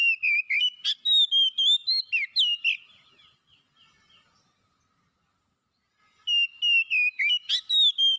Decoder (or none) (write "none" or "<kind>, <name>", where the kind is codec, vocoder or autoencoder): none